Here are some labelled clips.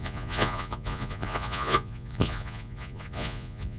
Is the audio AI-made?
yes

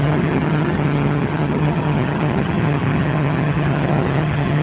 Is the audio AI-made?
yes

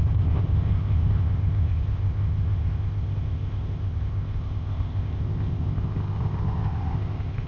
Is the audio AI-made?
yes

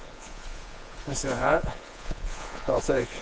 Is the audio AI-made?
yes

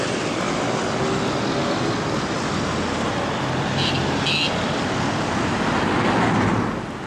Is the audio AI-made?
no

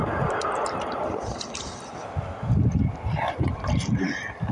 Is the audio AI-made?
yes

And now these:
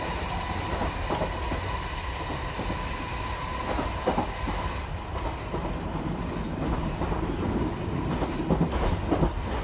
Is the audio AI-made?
no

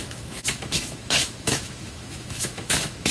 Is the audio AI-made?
yes